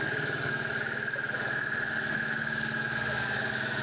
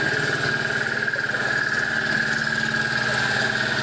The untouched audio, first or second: second